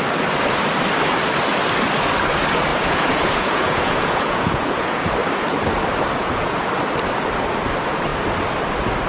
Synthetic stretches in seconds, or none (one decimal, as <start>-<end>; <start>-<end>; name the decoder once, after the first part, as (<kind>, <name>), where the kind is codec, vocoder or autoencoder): 2.7-5.1 (vocoder, Vocos); 6.2-6.7